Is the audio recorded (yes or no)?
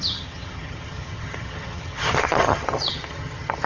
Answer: no